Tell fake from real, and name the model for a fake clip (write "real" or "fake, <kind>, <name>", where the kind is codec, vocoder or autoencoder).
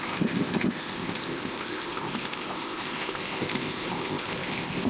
fake, codec, ZipCodec